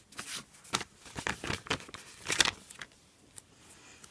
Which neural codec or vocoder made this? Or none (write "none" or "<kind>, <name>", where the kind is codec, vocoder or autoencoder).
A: none